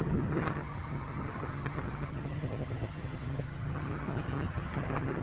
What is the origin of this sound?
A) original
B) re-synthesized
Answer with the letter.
B